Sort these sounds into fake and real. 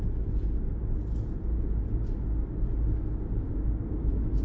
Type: real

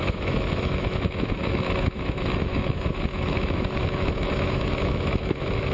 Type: fake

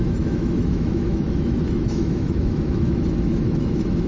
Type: fake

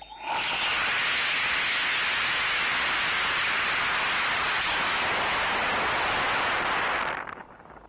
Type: real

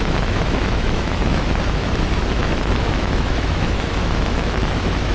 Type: fake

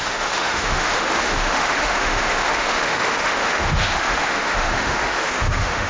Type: fake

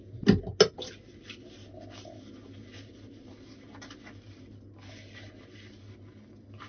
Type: real